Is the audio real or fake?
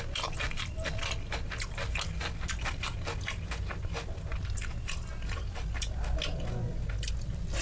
real